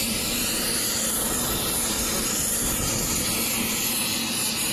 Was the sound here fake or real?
real